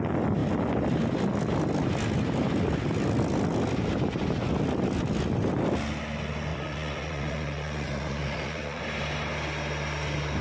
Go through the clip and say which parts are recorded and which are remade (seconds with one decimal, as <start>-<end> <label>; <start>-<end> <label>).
0.0-6.5 recorded; 6.5-8.8 remade; 8.8-10.4 recorded